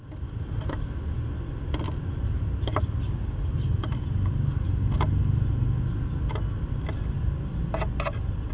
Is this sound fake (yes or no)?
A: no